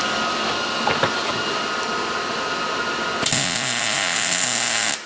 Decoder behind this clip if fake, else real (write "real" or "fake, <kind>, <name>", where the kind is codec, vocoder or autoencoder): real